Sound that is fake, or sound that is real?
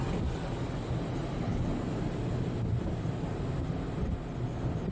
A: real